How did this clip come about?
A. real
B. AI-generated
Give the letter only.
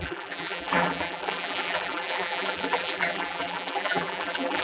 B